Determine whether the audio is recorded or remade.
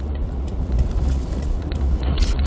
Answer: remade